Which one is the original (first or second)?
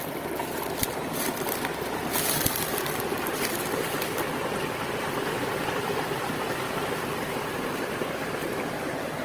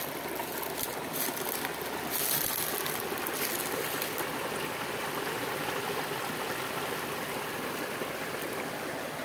second